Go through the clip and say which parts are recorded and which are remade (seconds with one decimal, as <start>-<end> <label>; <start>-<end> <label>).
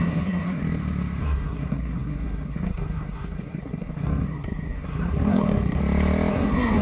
0.0-0.6 remade; 0.6-1.2 recorded; 1.2-5.8 remade; 5.8-6.3 recorded; 6.3-6.8 remade